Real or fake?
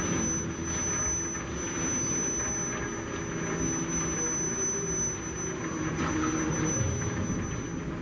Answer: real